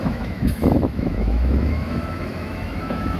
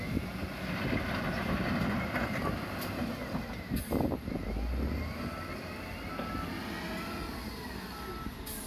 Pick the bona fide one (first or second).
second